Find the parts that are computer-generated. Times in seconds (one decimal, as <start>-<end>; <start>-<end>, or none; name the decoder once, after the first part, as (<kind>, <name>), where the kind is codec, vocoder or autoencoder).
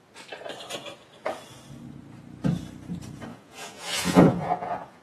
3.3-5.0 (vocoder, Vocos)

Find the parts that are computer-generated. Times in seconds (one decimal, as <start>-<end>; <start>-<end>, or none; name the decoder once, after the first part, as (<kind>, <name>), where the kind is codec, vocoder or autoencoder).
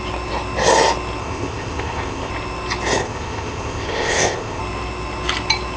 1.2-2.3 (codec, ZipCodec); 3.0-4.6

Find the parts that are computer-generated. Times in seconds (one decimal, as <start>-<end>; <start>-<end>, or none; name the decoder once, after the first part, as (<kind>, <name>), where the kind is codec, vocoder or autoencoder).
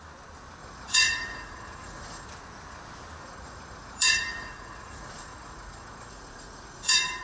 0.6-2.3 (vocoder, Vocos); 3.2-7.2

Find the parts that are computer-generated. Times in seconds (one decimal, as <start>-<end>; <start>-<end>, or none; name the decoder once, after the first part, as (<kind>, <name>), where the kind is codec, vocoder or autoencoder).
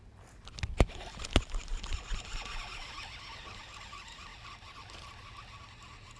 none